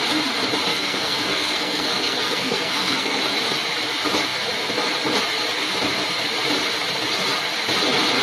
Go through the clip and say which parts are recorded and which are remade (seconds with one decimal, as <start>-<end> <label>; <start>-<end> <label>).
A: 0.0-0.7 recorded; 0.7-3.2 remade; 3.2-8.2 recorded